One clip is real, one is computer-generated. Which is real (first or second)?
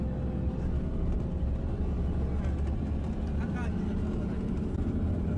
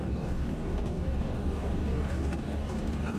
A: first